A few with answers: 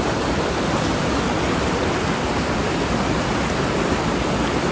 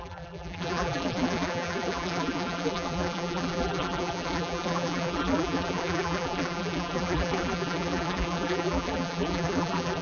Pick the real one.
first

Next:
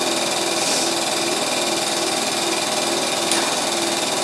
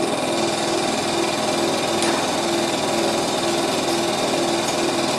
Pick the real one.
second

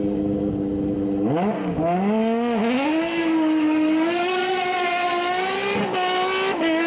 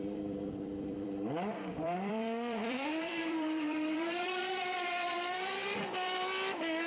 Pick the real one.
first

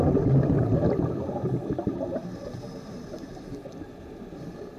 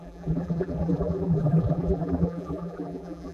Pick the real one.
first